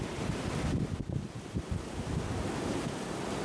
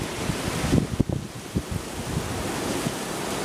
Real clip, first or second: second